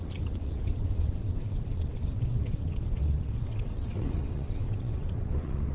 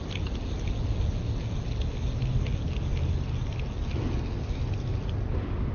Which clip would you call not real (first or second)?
first